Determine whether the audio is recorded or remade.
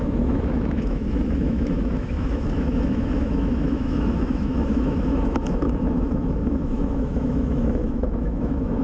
remade